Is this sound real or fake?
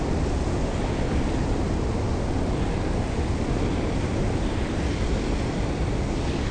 real